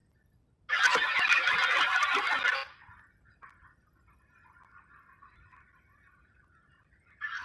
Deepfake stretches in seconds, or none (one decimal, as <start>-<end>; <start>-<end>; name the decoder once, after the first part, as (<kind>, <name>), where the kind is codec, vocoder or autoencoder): 1.1-7.4 (vocoder, BigVGAN v2)